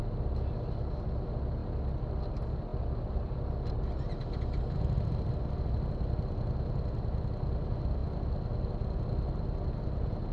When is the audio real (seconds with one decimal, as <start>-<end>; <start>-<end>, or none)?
0.0-10.3